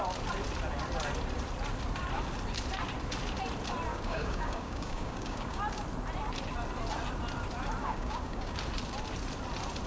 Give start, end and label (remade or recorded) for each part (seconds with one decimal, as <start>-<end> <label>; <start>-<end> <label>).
0.0-3.9 recorded; 3.9-5.6 remade; 5.6-7.8 recorded; 7.8-8.5 remade; 8.5-9.9 recorded